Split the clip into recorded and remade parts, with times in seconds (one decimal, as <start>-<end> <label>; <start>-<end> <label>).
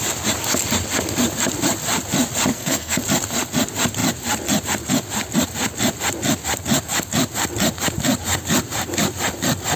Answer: 0.0-2.5 recorded; 2.5-3.0 remade; 3.0-9.8 recorded